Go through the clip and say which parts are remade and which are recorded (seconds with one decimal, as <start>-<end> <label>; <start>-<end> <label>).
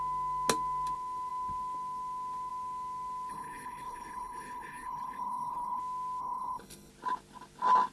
0.0-3.3 recorded; 3.3-5.8 remade; 5.8-6.2 recorded; 6.2-6.9 remade; 6.9-7.9 recorded